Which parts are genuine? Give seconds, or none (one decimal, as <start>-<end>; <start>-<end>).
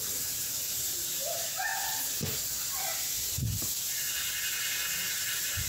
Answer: 1.7-5.1